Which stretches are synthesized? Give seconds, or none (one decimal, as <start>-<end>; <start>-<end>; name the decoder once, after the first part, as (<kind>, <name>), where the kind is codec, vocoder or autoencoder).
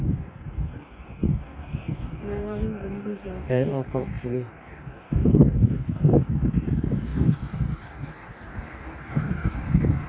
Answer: 0.0-10.1 (codec, DAC)